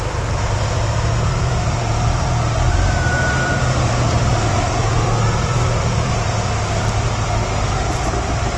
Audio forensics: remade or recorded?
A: remade